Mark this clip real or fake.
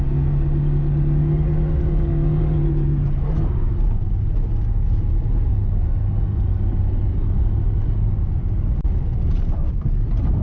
real